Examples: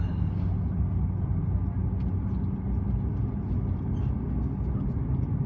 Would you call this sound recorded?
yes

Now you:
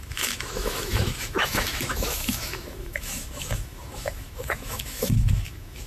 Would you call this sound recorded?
no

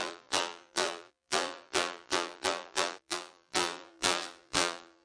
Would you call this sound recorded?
no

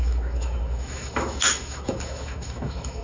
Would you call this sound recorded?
no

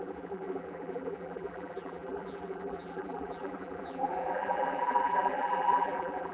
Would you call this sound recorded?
no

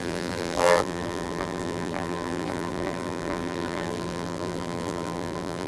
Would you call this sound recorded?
no